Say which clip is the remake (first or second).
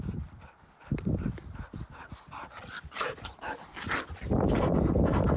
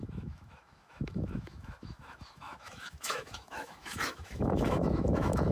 second